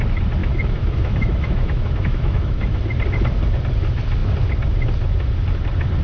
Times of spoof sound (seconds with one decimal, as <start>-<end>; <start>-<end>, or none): 0.4-2.8